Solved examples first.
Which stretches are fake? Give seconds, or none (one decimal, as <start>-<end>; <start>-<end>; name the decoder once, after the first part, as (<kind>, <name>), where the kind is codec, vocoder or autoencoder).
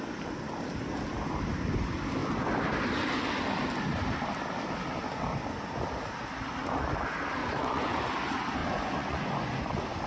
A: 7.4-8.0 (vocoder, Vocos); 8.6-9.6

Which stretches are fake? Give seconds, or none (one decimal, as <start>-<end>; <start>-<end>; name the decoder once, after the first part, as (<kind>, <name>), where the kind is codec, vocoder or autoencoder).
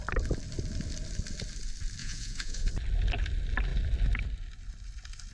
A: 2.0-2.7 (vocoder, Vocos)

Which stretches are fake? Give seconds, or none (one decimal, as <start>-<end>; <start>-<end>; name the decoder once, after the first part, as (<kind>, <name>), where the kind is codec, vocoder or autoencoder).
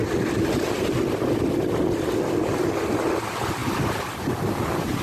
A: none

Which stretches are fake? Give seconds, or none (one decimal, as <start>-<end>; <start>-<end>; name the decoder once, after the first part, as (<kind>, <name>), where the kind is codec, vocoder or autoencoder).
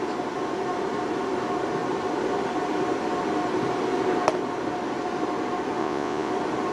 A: 5.8-6.3 (vocoder, Vocos)